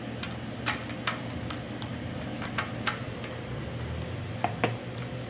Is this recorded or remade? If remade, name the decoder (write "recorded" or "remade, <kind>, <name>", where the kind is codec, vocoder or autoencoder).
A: recorded